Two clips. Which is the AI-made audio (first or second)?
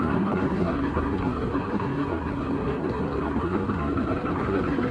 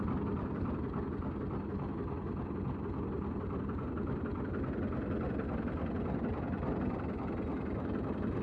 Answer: first